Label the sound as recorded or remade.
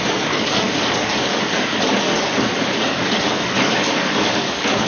remade